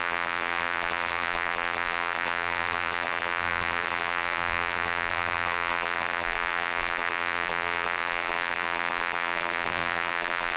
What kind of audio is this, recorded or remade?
remade